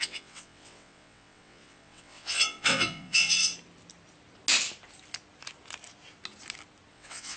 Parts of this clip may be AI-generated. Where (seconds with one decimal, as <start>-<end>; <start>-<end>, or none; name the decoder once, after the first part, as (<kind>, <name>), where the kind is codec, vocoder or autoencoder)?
0.0-3.5 (vocoder, WaveNeXt); 6.9-7.4